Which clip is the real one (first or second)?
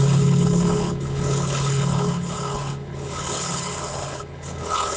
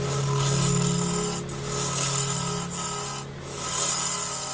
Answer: second